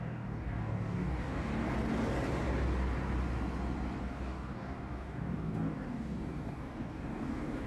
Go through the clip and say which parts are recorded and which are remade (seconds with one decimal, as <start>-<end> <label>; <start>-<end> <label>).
0.0-1.5 remade; 1.5-4.0 recorded; 4.0-7.7 remade